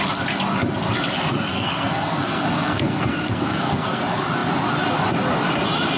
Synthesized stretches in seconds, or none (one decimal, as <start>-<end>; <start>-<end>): 1.5-4.0